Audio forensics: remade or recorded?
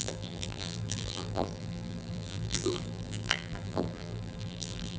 remade